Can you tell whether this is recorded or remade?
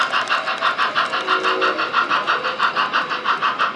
recorded